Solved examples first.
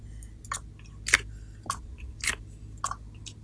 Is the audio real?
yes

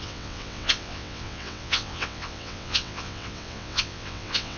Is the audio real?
no